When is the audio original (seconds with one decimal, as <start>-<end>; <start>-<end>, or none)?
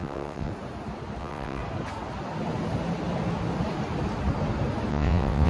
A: 0.5-1.2; 1.6-4.9